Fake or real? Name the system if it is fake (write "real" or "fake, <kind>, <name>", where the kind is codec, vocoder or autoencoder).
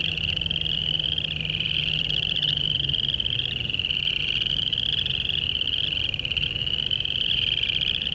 fake, vocoder, BigVGAN v2